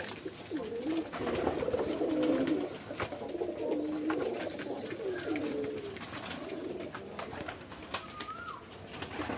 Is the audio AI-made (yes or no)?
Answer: no